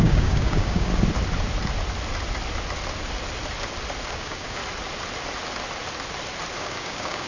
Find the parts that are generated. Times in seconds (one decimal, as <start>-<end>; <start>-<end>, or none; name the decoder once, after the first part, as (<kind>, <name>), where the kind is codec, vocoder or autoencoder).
0.0-0.9 (codec, DAC); 4.1-4.6; 6.6-7.3